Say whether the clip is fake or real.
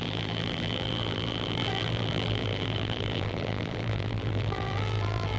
fake